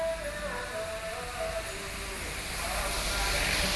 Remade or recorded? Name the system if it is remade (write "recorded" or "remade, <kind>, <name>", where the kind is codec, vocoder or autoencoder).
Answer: recorded